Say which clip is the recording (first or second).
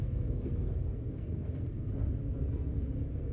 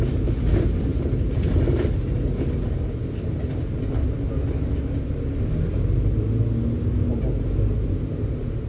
second